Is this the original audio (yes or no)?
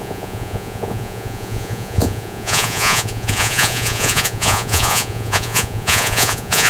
no